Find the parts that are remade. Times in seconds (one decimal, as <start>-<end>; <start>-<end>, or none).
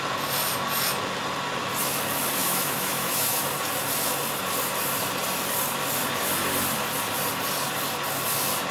2.4-3.4